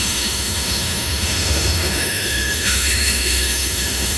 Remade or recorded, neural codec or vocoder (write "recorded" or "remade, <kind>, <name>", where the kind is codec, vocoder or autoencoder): remade, autoencoder, DAC-VAE